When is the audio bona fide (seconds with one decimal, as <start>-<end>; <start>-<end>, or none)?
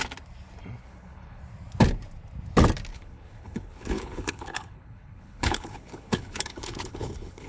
0.0-0.8; 1.4-2.9